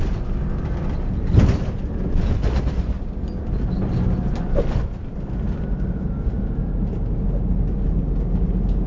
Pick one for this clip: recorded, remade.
recorded